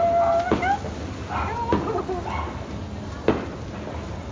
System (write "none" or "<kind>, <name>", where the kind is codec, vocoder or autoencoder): none